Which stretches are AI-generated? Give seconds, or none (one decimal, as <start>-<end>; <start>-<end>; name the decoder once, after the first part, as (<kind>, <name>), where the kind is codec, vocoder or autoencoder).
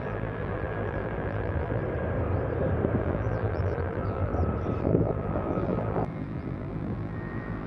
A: 0.0-1.8 (vocoder, BigVGAN v2); 3.0-4.3; 4.8-7.7